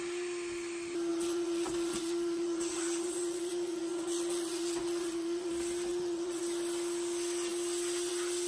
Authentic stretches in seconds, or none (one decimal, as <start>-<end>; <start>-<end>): 0.0-1.1; 5.5-5.9; 6.4-8.5